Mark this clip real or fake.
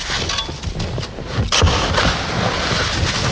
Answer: real